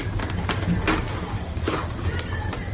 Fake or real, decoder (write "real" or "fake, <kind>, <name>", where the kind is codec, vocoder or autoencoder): real